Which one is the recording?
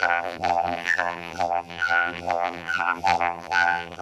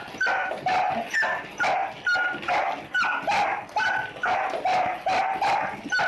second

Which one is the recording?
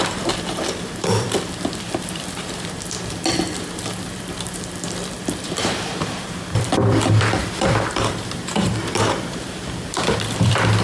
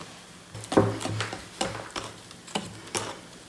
second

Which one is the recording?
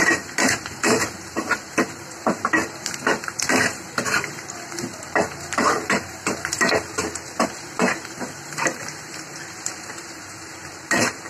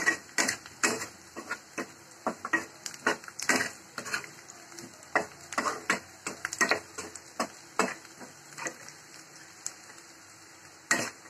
second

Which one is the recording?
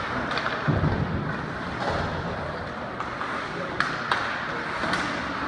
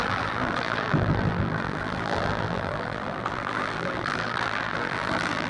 first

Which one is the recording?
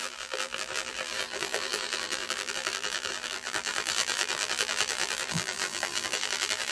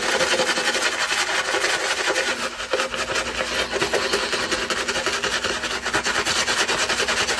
second